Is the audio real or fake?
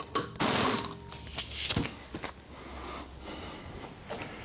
real